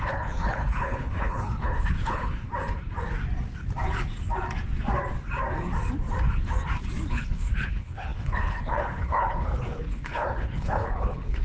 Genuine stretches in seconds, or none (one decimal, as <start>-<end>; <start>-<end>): 2.5-7.1